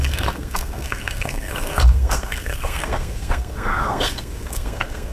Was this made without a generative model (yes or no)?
no